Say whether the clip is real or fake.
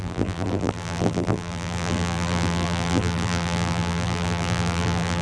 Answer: fake